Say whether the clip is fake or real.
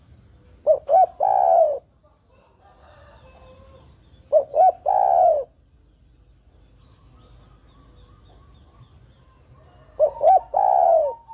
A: real